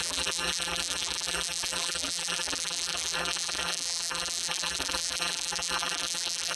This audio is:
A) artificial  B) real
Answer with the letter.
A